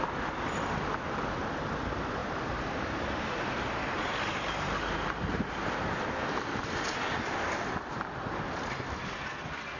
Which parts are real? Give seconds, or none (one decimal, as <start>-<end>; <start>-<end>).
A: 0.0-2.2; 5.9-9.8